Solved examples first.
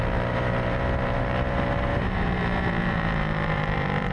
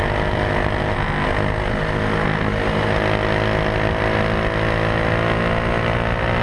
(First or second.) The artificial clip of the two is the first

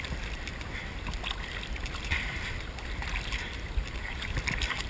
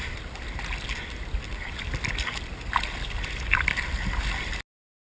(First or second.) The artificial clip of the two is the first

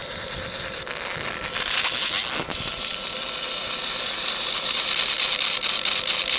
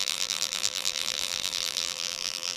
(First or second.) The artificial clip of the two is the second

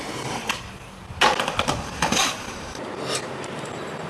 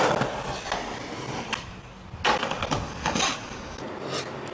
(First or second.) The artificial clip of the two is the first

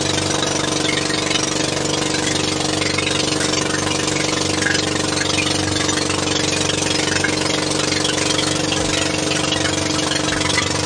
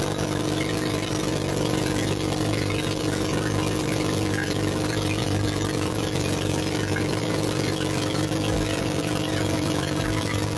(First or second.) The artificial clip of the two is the second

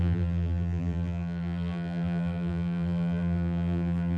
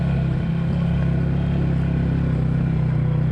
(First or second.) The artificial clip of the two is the first